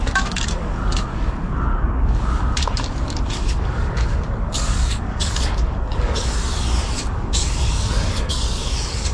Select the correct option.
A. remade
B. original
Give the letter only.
A